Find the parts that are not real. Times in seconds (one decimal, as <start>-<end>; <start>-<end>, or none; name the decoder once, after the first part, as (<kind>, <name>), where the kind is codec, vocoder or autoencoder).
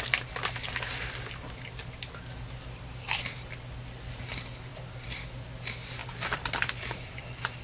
6.0-7.6 (vocoder, BigVGAN v2)